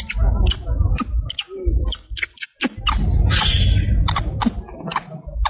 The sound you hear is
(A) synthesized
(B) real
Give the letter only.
B